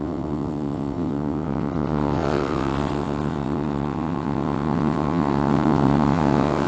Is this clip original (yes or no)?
no